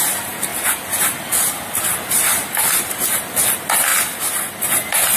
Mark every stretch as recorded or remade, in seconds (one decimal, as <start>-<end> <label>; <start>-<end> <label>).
0.0-5.2 recorded